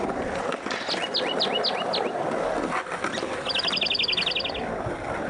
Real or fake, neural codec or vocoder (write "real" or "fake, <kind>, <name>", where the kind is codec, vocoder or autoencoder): real